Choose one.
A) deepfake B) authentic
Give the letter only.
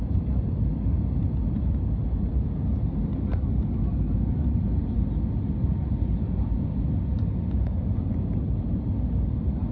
B